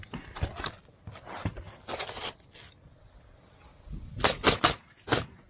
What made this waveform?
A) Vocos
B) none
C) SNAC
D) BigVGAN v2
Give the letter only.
B